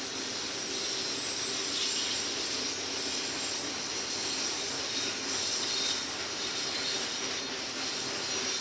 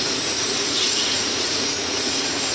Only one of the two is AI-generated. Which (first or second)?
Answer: second